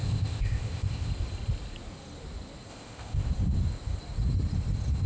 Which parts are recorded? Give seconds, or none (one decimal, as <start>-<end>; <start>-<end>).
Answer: 1.1-2.7; 3.3-5.1